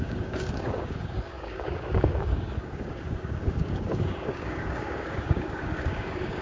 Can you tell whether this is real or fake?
fake